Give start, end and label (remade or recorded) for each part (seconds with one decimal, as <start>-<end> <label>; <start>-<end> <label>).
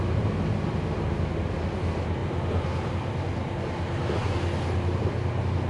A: 0.0-5.7 recorded